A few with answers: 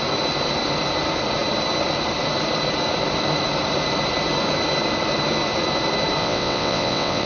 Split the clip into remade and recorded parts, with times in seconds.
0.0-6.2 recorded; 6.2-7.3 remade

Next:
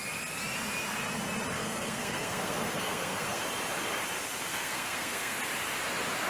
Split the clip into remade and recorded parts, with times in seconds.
0.0-1.6 recorded; 1.6-3.4 remade; 3.4-4.5 recorded; 4.5-5.4 remade; 5.4-6.3 recorded

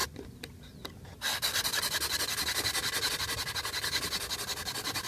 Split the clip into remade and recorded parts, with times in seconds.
0.0-5.1 recorded

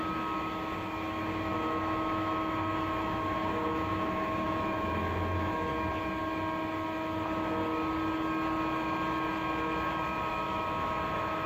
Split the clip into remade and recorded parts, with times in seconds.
0.0-5.7 remade; 5.7-10.2 recorded; 10.2-11.5 remade